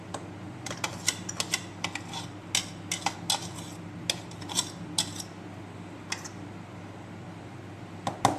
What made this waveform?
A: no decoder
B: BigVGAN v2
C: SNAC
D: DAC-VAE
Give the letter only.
A